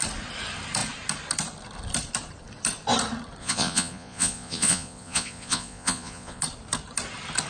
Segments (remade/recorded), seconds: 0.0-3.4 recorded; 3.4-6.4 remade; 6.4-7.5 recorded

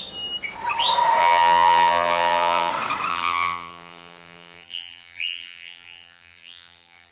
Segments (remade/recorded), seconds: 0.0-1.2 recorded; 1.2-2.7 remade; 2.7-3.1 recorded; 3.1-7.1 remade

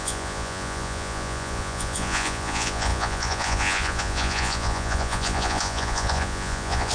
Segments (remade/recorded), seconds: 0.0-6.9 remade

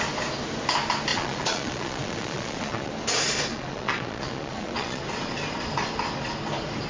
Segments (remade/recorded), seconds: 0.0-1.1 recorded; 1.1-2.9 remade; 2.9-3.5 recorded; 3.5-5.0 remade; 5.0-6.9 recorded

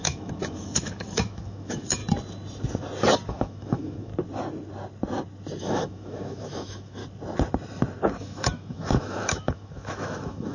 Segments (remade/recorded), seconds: 0.0-2.0 remade; 2.0-3.3 recorded; 3.3-4.1 remade; 4.1-5.6 recorded; 5.6-7.0 remade; 7.0-8.2 recorded; 8.2-10.5 remade

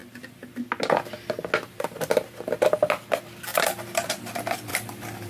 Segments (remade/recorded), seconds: 0.0-3.5 recorded; 3.5-4.1 remade; 4.1-4.7 recorded; 4.7-5.3 remade

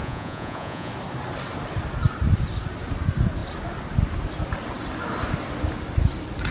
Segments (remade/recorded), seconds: 0.0-0.9 remade; 0.9-6.5 recorded